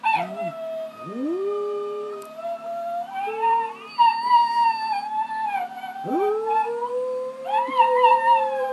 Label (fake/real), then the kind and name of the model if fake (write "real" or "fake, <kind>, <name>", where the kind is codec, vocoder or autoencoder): real